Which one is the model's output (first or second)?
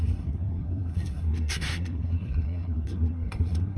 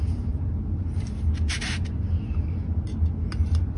first